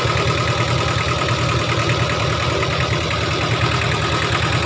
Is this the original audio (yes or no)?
yes